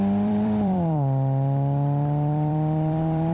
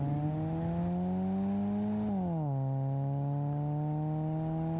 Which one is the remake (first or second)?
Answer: first